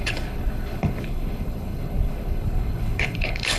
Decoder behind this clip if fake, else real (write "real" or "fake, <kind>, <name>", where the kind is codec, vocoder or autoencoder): fake, codec, HILCodec